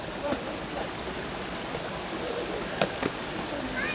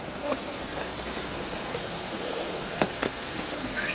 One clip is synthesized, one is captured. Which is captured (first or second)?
first